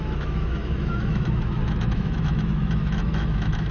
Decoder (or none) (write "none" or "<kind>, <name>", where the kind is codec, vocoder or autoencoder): autoencoder, DAC-VAE